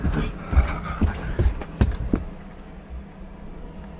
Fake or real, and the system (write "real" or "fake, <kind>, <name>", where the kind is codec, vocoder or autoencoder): real